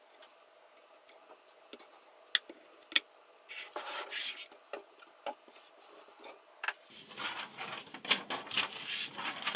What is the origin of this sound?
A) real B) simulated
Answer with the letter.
A